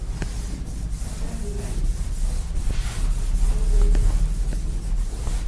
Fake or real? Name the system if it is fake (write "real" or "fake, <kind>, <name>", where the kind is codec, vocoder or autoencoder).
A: real